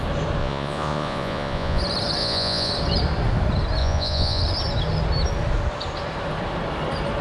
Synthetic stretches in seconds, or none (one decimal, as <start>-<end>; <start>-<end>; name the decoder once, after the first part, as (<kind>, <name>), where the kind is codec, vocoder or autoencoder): 0.4-1.8 (vocoder, Vocos); 2.2-2.7; 3.8-4.4